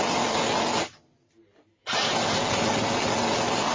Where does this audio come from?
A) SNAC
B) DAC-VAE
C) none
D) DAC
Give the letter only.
C